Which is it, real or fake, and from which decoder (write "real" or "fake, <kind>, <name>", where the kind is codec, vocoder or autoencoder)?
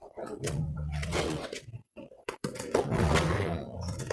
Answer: fake, vocoder, WaveNeXt